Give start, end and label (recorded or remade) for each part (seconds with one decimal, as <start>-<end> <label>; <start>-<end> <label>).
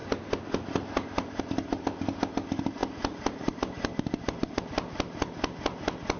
0.0-2.8 recorded; 2.8-4.6 remade; 4.6-6.2 recorded